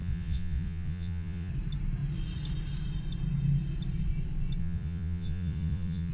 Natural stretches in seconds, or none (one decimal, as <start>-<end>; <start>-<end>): 1.5-4.6

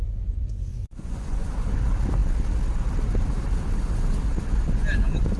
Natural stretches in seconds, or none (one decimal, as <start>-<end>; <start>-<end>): 1.8-5.4

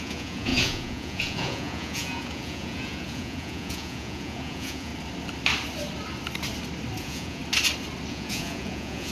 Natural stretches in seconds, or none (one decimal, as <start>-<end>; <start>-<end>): 4.9-7.0; 7.4-8.1

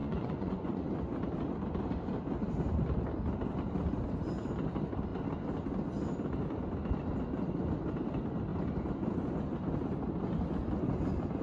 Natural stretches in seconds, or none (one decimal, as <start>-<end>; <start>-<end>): 0.9-11.4

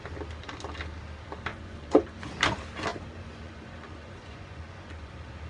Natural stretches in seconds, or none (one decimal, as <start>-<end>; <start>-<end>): 0.0-1.5; 2.3-2.9; 5.1-5.5